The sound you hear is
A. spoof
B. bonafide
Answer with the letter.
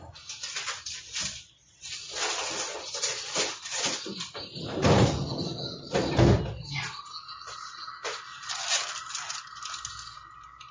B